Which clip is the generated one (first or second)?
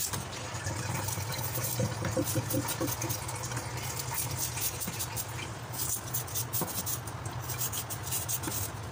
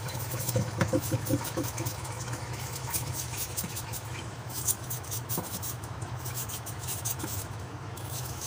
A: second